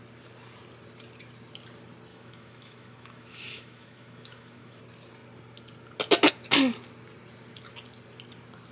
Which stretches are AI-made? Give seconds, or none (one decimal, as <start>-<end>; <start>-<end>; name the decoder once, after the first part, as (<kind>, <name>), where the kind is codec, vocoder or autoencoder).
2.1-4.8 (autoencoder, DAC-VAE)